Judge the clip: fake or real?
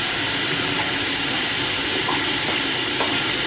real